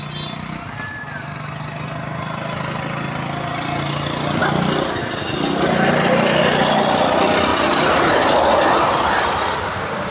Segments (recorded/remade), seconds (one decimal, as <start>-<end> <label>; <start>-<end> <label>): 0.0-10.1 recorded